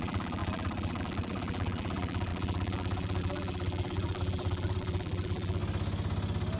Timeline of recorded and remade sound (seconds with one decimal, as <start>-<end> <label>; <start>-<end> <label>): 0.0-5.6 remade; 5.6-6.6 recorded